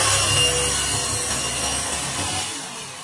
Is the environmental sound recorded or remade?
recorded